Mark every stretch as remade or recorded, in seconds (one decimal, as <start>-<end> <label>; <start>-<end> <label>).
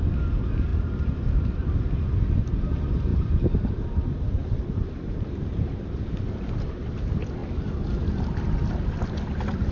0.0-0.7 recorded; 0.7-1.5 remade; 1.5-3.1 recorded; 3.1-6.1 remade; 6.1-9.7 recorded